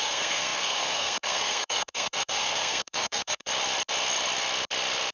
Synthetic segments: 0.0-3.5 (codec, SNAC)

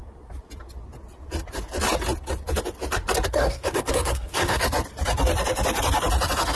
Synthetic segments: 3.3-4.6 (codec, SNAC)

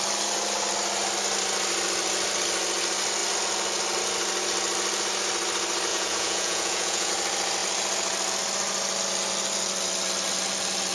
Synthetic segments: 5.9-7.1 (vocoder, Vocos)

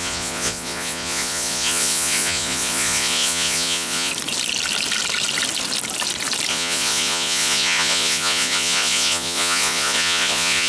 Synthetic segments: 0.0-4.1 (vocoder, Vocos); 6.5-10.7